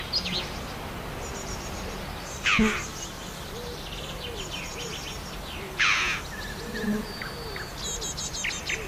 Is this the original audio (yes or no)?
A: yes